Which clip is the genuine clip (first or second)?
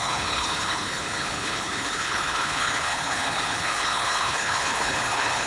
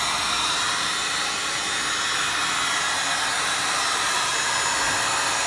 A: second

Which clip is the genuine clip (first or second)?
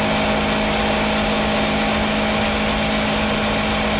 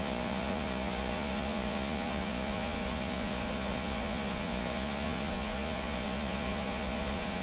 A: first